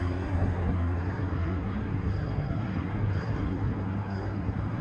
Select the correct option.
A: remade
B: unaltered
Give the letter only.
A